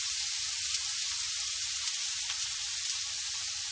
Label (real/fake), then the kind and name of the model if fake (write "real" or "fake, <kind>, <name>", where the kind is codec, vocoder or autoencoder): real